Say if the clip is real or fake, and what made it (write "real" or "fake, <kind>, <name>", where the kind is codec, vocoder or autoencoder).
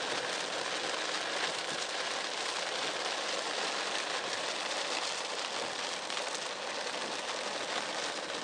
real